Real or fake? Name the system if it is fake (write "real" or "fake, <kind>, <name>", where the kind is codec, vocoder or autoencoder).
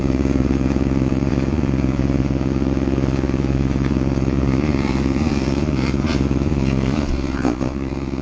fake, vocoder, Vocos